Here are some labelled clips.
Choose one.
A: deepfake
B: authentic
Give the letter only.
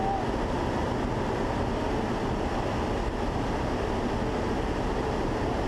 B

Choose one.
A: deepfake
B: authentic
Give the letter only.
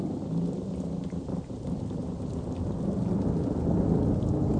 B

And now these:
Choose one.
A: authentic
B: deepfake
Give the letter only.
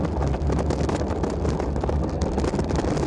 A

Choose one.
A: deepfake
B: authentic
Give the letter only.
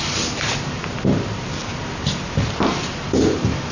B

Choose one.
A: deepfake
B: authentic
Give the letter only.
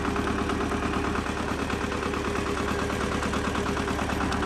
B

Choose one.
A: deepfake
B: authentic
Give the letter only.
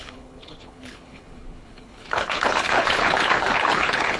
A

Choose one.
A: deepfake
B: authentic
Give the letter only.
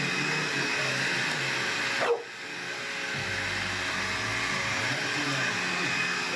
B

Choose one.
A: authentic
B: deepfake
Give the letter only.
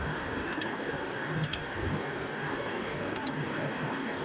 B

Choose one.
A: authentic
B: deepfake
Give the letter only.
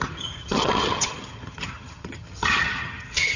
B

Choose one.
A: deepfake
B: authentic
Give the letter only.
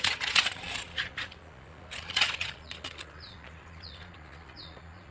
A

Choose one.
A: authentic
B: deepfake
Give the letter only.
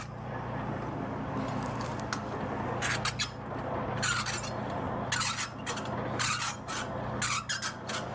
A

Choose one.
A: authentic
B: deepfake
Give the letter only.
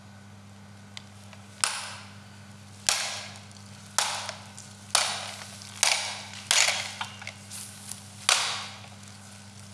A